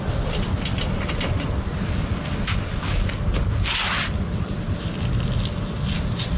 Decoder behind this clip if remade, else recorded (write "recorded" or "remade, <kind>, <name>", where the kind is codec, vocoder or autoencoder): recorded